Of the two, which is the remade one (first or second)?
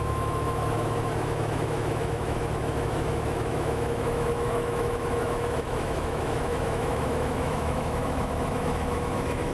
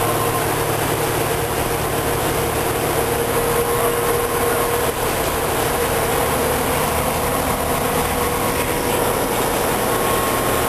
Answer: first